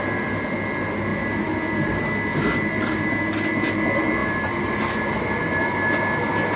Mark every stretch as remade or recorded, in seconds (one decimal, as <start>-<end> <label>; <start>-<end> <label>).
0.0-6.6 recorded